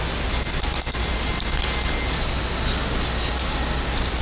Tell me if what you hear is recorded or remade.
recorded